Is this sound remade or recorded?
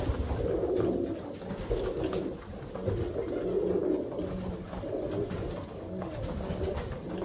recorded